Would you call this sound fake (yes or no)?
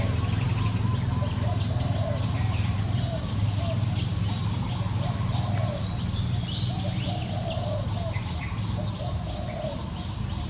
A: no